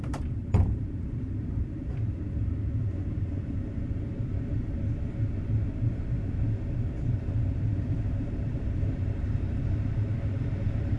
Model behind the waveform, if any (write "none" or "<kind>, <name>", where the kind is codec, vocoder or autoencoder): vocoder, BigVGAN v2